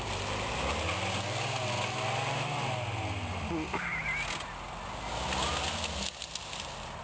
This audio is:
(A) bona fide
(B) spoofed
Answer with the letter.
A